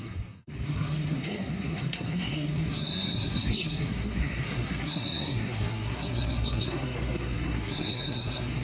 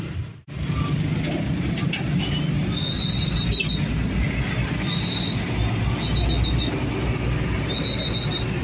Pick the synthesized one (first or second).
first